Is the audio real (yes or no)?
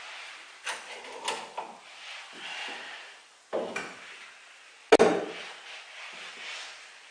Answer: yes